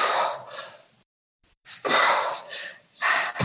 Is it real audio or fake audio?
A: fake